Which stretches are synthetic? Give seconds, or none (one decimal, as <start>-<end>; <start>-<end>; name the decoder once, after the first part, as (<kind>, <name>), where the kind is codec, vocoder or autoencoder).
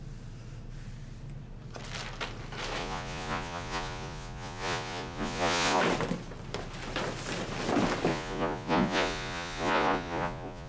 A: 2.8-5.8 (vocoder, Vocos); 8.1-10.7